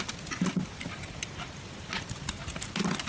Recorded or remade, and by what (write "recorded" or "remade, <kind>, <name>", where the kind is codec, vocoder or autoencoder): recorded